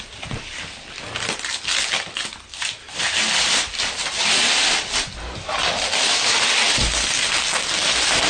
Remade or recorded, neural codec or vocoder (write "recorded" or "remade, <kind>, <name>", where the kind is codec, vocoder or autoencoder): recorded